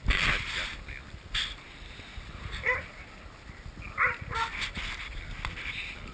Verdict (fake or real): real